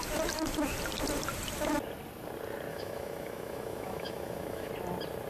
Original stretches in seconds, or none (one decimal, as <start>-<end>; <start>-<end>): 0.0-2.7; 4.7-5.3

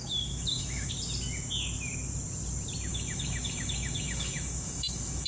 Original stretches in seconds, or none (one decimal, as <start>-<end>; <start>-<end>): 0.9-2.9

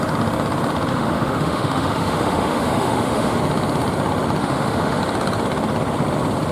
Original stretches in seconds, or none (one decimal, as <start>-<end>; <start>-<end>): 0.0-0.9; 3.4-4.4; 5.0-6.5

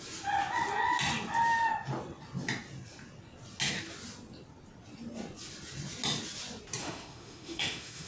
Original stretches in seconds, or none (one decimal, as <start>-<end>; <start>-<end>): 0.0-6.8

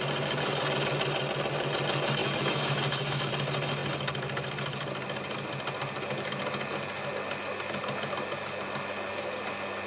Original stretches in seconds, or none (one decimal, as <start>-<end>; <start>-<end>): 0.0-2.2; 3.3-9.9